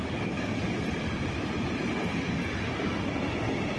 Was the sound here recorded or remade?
recorded